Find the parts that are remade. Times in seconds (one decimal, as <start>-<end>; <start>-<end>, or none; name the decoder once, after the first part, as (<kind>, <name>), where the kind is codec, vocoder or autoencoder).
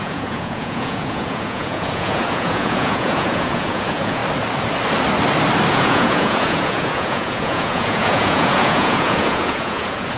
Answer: 0.0-4.2 (vocoder, Vocos); 5.7-10.2